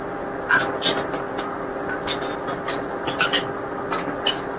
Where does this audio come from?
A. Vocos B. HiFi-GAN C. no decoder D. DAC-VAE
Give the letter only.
C